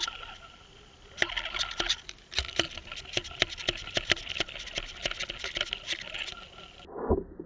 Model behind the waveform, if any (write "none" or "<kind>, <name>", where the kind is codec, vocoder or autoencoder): none